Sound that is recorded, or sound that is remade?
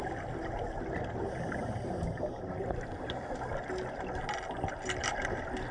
recorded